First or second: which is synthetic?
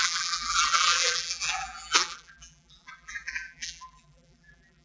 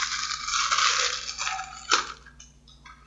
first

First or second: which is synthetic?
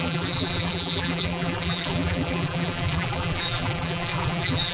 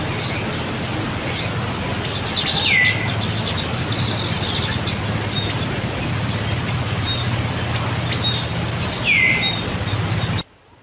first